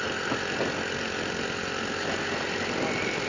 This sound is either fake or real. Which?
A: real